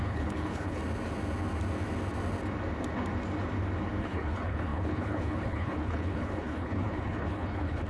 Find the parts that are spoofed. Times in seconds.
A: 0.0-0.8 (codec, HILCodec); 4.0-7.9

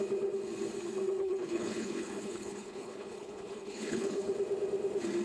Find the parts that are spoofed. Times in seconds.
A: 1.2-4.3 (codec, HILCodec)

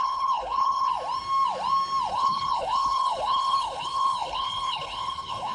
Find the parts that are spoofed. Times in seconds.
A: 0.0-0.9 (codec, HILCodec); 2.1-5.5